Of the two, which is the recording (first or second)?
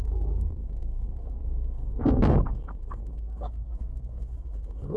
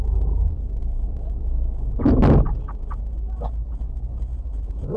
second